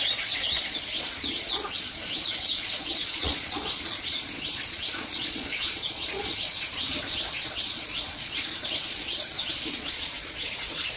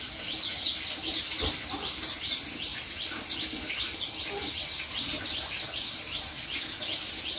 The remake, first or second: first